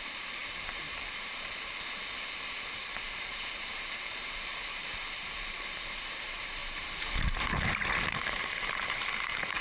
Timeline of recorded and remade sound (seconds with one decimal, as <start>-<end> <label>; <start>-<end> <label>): 0.0-9.6 remade